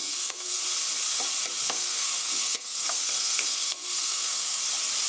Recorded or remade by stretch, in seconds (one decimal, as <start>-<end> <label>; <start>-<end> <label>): 0.0-0.6 remade; 0.6-1.6 recorded; 1.6-4.6 remade; 4.6-5.1 recorded